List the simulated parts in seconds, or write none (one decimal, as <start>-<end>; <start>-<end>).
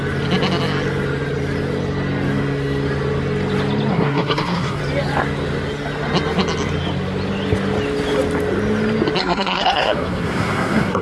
3.9-4.8; 9.2-11.0